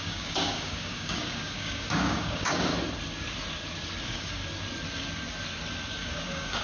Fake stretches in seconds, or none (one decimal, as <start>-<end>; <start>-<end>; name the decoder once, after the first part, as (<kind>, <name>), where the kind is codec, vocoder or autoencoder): 0.0-2.7 (codec, DAC); 4.0-4.4; 5.9-6.6